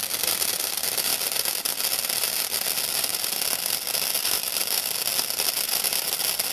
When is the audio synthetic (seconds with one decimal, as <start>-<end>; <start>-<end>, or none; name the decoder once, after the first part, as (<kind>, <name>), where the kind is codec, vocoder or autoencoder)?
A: none